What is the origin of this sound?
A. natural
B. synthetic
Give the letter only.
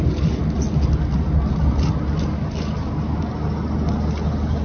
A